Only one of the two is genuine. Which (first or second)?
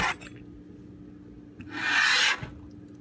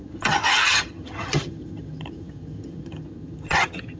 first